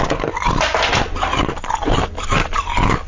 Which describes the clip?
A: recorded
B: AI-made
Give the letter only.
A